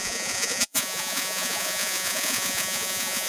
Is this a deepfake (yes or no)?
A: yes